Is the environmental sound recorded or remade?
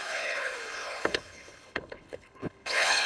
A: remade